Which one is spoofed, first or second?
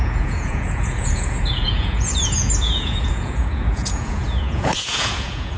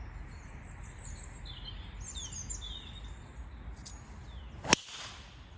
first